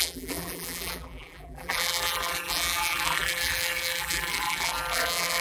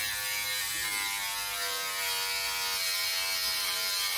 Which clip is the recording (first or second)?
second